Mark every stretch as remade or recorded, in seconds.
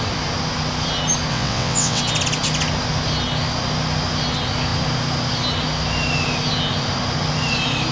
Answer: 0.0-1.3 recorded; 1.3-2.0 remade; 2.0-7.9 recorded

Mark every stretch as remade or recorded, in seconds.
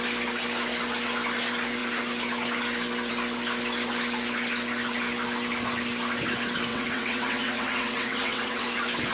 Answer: 0.0-6.7 recorded; 6.7-8.6 remade; 8.6-9.1 recorded